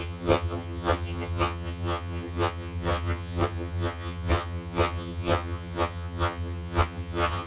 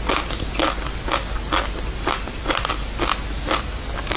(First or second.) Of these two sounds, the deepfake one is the first